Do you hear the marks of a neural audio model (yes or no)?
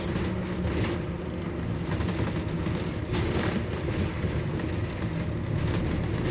no